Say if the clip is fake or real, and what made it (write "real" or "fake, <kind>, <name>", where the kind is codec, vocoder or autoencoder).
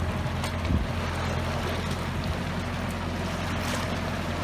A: real